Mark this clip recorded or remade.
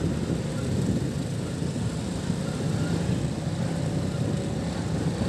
recorded